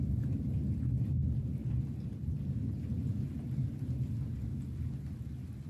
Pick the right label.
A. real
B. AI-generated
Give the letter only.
A